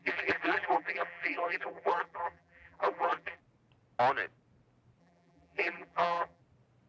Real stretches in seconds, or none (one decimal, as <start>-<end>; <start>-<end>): 3.4-5.0; 6.4-6.9